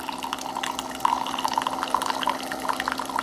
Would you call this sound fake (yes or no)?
no